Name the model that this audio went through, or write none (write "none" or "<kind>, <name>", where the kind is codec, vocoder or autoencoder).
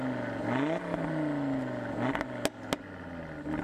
none